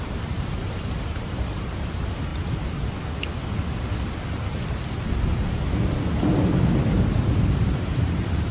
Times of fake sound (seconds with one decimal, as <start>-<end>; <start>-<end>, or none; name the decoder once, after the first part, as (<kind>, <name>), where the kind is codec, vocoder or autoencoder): 0.0-2.3 (vocoder, BigVGAN v2); 7.1-8.5